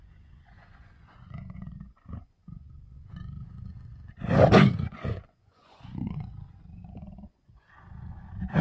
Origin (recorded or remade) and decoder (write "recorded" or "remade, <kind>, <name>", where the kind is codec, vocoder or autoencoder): remade, vocoder, Vocos